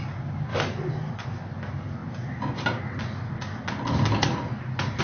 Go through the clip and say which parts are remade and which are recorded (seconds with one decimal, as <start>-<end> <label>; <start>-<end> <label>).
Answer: 0.0-5.0 recorded